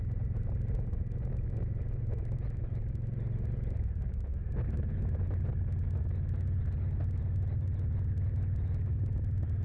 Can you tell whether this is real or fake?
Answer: real